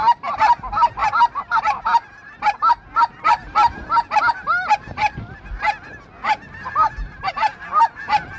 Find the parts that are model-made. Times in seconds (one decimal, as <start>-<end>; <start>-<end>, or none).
none